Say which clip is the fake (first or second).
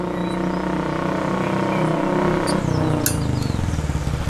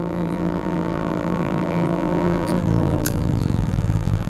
second